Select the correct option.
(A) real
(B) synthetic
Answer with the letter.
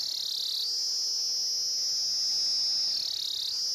A